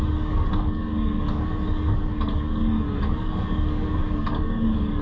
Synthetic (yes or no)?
yes